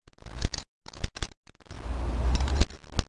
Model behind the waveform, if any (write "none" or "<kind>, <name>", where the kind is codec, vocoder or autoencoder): none